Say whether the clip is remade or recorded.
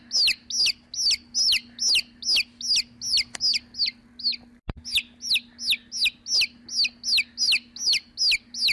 recorded